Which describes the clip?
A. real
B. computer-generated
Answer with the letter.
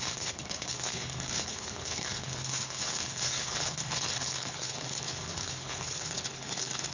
B